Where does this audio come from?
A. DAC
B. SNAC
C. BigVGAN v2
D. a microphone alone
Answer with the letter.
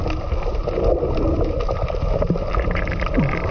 C